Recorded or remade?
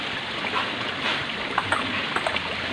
remade